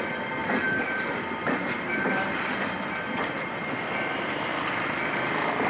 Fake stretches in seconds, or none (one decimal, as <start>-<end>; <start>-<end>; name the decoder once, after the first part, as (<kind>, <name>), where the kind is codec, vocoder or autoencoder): 0.4-1.0 (vocoder, BigVGAN v2); 1.4-2.4